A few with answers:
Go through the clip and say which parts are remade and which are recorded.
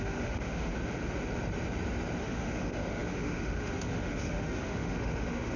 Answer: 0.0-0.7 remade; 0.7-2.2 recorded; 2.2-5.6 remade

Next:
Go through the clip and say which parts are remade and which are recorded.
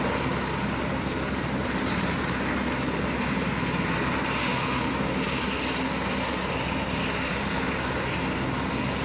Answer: 0.0-4.4 recorded; 4.4-4.9 remade; 4.9-9.0 recorded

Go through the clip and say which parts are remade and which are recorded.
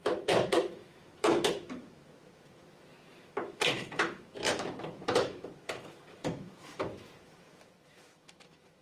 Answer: 0.0-8.8 remade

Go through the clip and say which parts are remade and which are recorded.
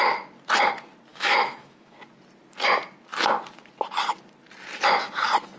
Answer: 0.0-1.1 recorded; 1.1-2.0 remade; 2.0-5.6 recorded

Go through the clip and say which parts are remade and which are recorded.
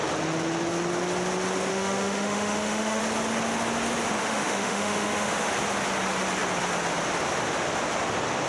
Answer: 0.0-1.7 recorded; 1.7-3.0 remade; 3.0-4.2 recorded; 4.2-5.5 remade; 5.5-8.5 recorded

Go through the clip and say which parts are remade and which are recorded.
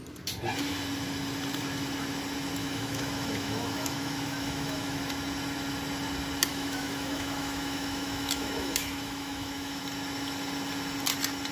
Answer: 0.0-2.6 recorded; 2.6-5.0 remade; 5.0-6.5 recorded; 6.5-9.8 remade; 9.8-11.5 recorded